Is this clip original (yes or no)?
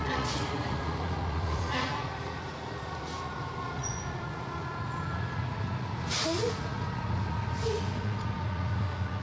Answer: no